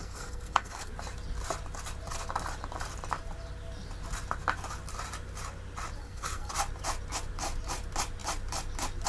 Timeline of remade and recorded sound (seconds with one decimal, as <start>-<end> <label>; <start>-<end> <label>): 0.0-0.9 remade; 0.9-6.0 recorded; 6.0-6.5 remade; 6.5-9.1 recorded